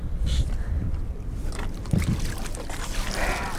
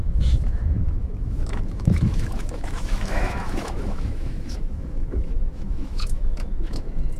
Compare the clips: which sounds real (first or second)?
first